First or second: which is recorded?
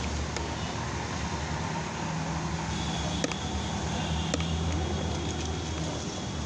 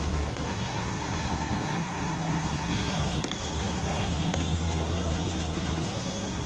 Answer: first